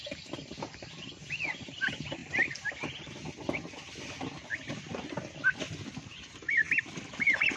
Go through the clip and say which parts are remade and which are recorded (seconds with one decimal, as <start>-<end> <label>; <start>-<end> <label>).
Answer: 0.0-7.6 recorded